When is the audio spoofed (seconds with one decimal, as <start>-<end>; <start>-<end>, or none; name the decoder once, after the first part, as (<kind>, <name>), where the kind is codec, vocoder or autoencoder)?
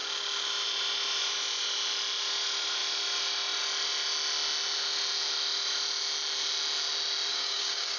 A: 7.3-8.0 (codec, DAC)